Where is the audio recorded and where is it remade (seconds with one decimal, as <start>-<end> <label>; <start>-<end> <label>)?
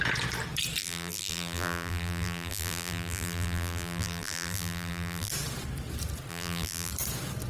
0.0-0.8 recorded; 0.8-5.3 remade; 5.3-6.3 recorded; 6.3-6.9 remade; 6.9-7.5 recorded